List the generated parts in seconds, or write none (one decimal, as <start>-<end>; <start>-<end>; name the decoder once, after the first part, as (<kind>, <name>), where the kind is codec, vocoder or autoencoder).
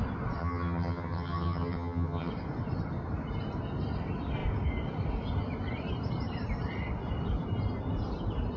0.4-2.3 (vocoder, HiFi-GAN)